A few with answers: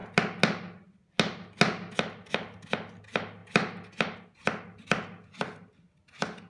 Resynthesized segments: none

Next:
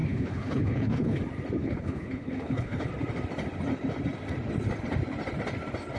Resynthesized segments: 0.0-1.2 (codec, HILCodec); 1.6-2.9

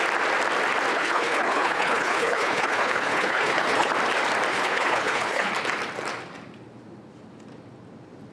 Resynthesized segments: 0.9-3.9 (codec, HILCodec); 4.5-5.5

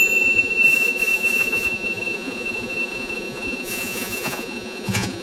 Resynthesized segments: 0.0-5.2 (vocoder, Vocos)

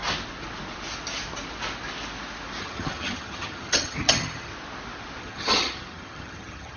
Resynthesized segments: 2.6-4.5 (vocoder, HiFi-GAN); 5.2-6.8